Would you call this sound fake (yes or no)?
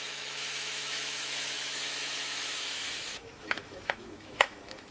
yes